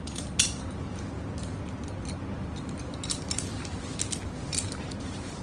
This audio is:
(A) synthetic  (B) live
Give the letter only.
B